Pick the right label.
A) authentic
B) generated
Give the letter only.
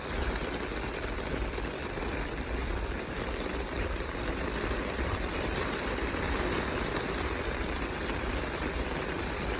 B